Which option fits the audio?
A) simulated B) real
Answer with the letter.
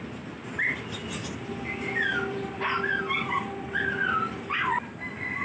B